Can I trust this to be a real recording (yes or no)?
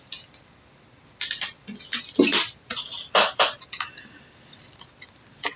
yes